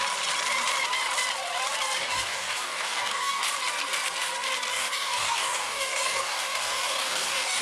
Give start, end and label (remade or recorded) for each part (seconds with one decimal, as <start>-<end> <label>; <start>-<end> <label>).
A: 0.0-2.0 recorded; 2.0-3.4 remade; 3.4-4.7 recorded; 4.7-7.6 remade